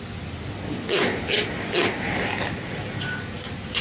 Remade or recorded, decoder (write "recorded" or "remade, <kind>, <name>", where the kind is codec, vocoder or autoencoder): recorded